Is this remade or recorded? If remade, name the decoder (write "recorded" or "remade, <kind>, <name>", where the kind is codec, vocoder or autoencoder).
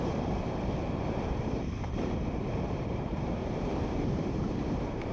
remade, vocoder, BigVGAN v2